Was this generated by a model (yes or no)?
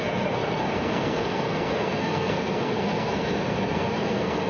yes